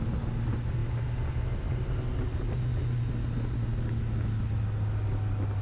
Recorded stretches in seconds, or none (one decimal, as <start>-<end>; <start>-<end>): 0.0-5.6